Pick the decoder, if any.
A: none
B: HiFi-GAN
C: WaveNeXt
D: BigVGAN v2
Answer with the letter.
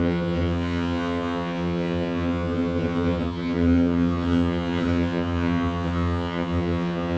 B